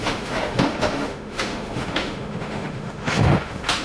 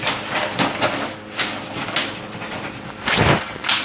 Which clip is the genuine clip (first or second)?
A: second